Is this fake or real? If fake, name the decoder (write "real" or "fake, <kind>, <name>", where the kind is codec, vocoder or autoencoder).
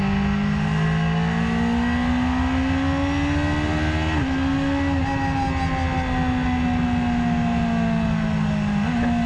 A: real